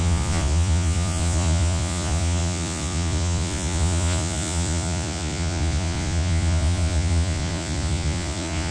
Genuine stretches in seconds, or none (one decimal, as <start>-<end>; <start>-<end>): none